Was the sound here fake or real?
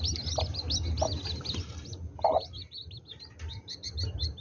real